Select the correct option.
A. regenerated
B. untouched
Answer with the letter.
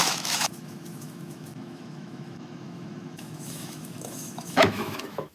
A